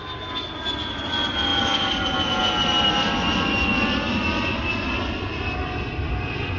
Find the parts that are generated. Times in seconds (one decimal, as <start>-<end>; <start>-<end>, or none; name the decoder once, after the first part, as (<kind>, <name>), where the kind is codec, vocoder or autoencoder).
none